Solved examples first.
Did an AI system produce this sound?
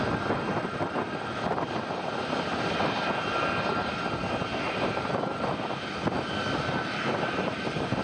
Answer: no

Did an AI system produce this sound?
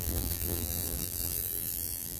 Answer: yes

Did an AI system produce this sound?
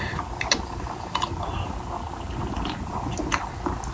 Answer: no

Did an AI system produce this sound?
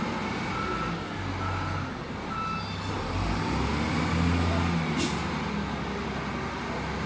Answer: no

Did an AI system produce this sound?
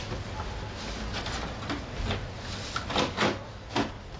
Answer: no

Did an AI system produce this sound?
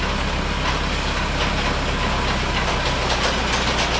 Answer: no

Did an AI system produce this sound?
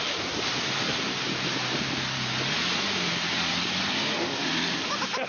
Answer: no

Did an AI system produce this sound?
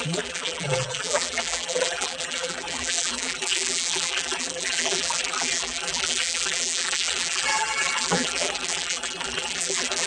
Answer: yes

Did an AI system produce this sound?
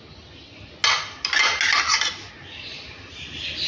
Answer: no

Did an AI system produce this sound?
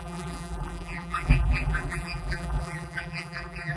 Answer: yes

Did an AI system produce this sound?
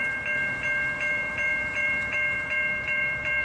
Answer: yes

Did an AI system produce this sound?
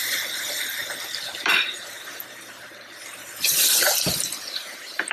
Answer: yes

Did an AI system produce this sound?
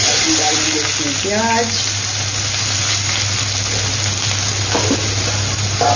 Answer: no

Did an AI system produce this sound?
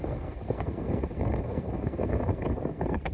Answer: yes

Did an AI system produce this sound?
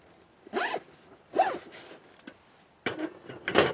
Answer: no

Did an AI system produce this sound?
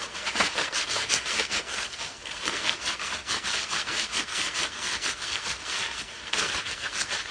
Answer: yes